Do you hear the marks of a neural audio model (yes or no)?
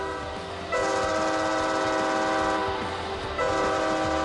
no